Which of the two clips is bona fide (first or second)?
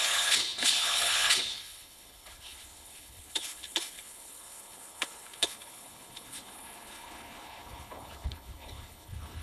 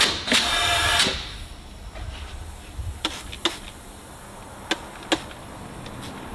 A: second